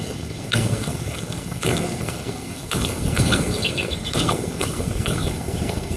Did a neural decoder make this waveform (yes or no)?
yes